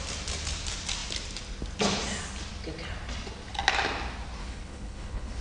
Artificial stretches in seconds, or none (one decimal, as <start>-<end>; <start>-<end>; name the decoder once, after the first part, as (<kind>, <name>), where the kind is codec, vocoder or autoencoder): 4.4-5.4 (codec, HILCodec)